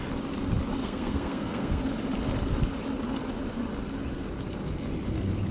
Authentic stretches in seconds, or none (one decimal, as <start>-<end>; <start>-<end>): 0.0-0.8; 1.8-5.5